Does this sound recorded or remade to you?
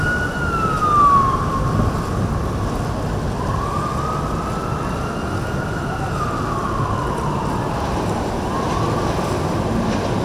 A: recorded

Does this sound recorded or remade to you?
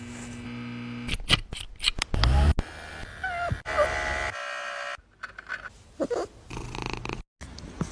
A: recorded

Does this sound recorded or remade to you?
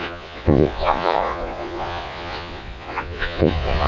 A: remade